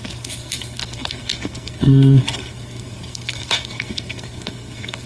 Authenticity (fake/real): fake